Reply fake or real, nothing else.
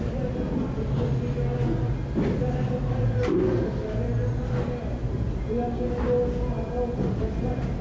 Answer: real